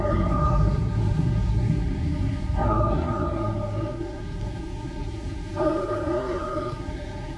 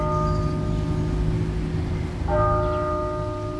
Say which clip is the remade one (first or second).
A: first